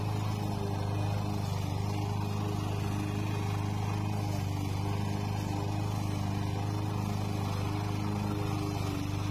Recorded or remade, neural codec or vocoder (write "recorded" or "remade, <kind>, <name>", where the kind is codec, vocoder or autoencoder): recorded